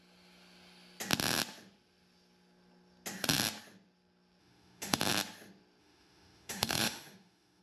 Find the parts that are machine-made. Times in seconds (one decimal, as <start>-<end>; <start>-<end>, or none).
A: 4.4-5.0; 5.8-7.6